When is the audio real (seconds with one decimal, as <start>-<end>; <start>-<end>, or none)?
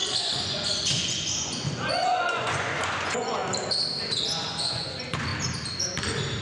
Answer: 3.4-4.0; 5.3-6.4